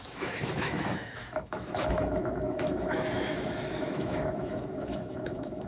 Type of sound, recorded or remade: remade